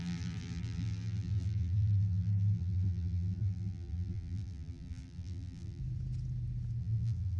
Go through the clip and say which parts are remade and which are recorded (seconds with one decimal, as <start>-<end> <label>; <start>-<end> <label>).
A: 0.0-5.8 remade; 5.8-6.8 recorded; 6.8-7.4 remade